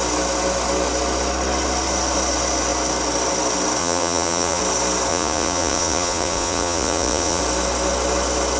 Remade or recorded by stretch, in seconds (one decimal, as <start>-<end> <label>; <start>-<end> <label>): 0.0-3.8 recorded; 3.8-4.6 remade; 4.6-5.1 recorded; 5.1-7.4 remade; 7.4-8.6 recorded